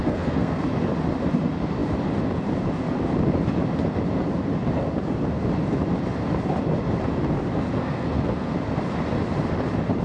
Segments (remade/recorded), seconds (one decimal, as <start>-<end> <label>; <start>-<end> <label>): 0.0-0.6 remade; 0.6-7.8 recorded; 7.8-8.5 remade; 8.5-10.0 recorded